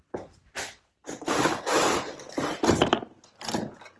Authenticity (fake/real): real